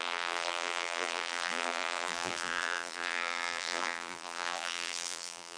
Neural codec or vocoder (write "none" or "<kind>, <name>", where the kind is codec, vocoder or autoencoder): vocoder, BigVGAN v2